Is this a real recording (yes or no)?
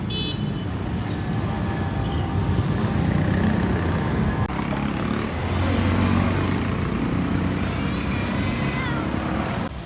yes